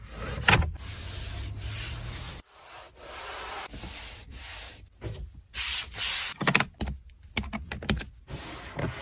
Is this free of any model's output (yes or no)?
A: yes